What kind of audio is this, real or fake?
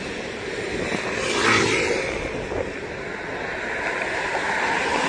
real